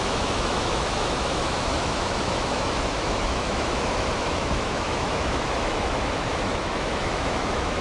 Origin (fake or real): fake